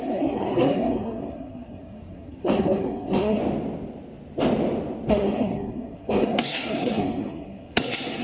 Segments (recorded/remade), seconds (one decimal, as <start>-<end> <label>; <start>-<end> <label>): 0.0-3.4 remade; 3.4-5.1 recorded; 5.1-8.2 remade